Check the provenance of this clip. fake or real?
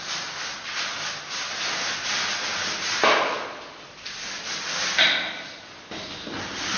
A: real